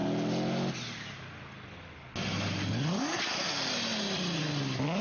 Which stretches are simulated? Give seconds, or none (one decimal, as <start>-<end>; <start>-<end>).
none